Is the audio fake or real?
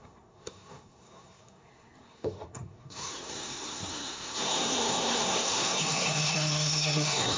fake